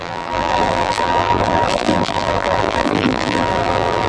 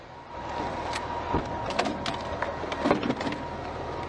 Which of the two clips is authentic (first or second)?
second